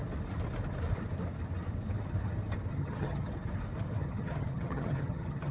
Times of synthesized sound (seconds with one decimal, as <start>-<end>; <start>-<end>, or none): 2.7-3.3; 4.0-5.5